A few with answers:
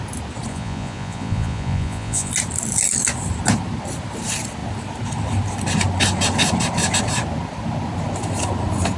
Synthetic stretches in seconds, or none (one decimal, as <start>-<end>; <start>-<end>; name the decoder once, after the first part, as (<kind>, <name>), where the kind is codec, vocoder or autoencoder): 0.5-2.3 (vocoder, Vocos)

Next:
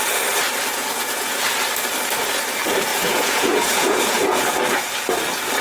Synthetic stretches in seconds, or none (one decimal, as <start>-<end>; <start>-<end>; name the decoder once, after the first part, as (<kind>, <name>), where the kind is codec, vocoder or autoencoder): 0.7-1.4 (vocoder, Vocos); 2.9-4.6

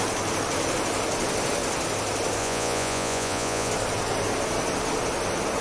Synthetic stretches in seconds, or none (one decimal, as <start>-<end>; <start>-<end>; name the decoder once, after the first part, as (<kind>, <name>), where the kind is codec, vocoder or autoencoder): 2.4-3.7 (vocoder, Vocos)

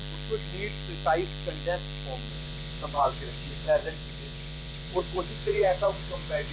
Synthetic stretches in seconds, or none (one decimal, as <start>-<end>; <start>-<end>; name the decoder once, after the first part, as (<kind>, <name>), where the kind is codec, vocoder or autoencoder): 2.3-6.5 (vocoder, Vocos)

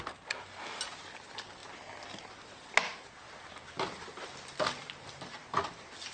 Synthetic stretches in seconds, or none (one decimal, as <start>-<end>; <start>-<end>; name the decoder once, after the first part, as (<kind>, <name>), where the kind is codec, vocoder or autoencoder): none

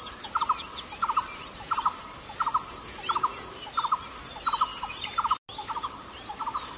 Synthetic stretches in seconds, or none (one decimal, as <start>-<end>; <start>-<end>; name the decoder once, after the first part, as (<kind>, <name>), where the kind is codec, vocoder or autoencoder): none

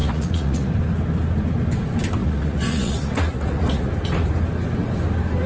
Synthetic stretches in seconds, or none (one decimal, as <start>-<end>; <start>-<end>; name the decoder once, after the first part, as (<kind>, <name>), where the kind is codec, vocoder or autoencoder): 0.0-0.7 (vocoder, Vocos); 2.2-3.9